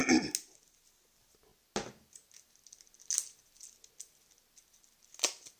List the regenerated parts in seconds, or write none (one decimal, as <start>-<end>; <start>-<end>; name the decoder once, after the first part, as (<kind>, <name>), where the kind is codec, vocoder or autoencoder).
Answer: none

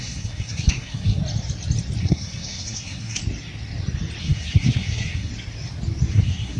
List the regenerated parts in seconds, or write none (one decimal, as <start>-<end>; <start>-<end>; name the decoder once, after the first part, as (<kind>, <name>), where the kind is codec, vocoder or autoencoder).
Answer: 0.0-1.2 (codec, SNAC); 2.0-3.2; 4.2-5.3; 6.1-6.6

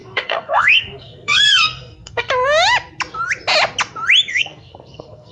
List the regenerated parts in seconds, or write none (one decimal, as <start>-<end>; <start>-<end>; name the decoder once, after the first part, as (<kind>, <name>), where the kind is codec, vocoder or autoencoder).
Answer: 0.0-2.3 (codec, SNAC); 4.3-5.3

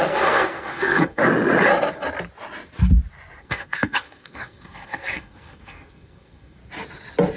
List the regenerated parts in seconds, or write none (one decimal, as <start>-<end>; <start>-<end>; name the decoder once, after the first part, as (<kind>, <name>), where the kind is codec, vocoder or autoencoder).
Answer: 0.0-1.2 (codec, SNAC); 3.4-6.6

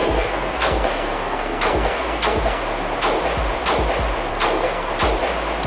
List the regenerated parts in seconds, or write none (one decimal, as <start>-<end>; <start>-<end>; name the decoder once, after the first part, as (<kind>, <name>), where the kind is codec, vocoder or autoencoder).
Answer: 0.0-2.6 (codec, SNAC); 4.3-4.9

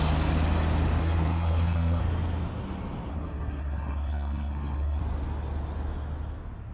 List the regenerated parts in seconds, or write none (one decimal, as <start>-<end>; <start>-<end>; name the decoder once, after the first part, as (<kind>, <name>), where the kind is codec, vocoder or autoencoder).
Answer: 1.0-2.0 (codec, SNAC); 3.1-5.0